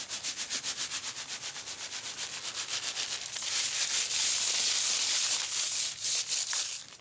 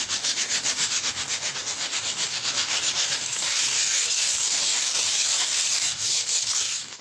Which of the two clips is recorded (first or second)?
first